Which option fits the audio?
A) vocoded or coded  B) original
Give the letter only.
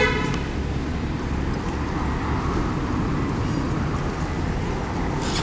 B